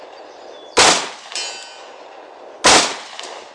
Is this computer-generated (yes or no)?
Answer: no